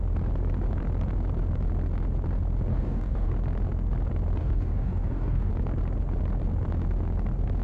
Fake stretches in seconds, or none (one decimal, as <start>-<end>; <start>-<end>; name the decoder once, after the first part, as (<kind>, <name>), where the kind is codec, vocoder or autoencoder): 2.7-3.3 (codec, DAC); 4.4-5.5